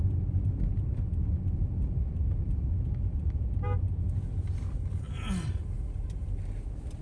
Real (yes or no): yes